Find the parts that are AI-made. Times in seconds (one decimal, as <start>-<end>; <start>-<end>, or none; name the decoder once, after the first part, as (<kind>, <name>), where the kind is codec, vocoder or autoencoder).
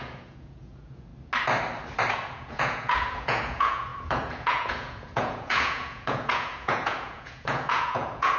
0.0-1.1 (vocoder, Vocos); 2.1-8.4